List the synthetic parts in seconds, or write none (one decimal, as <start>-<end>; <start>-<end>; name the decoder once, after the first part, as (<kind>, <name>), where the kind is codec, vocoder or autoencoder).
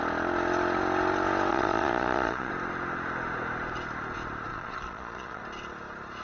1.5-2.5 (vocoder, Vocos); 4.5-5.4